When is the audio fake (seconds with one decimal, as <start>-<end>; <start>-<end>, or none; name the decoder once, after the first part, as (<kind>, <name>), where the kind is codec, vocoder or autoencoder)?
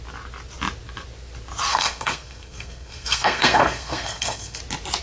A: 1.7-4.6 (codec, SNAC)